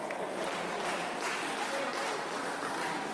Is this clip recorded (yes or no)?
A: yes